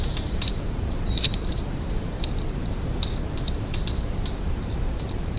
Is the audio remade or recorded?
remade